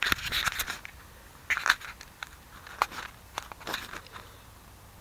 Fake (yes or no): no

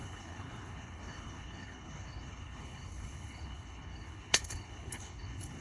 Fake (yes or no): yes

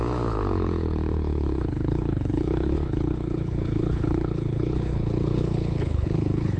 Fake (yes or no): yes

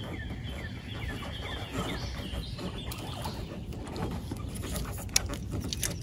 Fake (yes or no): no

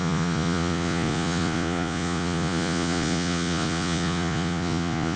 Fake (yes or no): yes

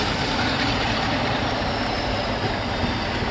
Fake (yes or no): no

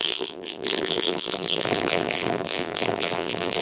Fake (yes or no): yes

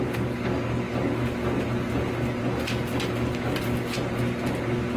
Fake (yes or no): no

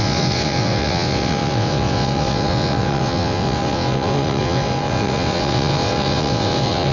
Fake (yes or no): yes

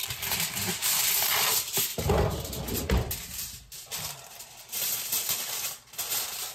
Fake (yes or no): no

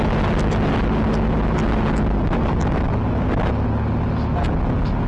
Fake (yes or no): no